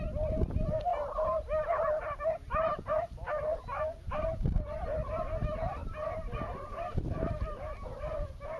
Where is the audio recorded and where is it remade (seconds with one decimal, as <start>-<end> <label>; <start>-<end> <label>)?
0.0-0.9 recorded; 0.9-2.8 remade; 2.8-5.8 recorded; 5.8-8.6 remade